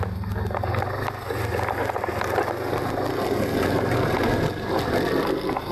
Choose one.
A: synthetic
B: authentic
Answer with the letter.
B